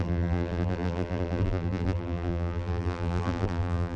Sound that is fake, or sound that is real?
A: fake